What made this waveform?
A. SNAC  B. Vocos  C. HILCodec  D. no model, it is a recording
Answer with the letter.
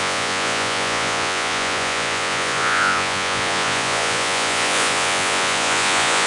B